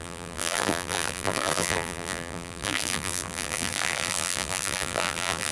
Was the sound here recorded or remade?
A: remade